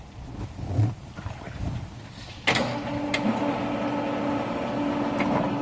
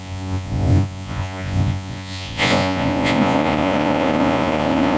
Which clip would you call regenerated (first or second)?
second